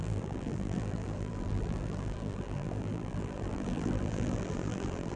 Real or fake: fake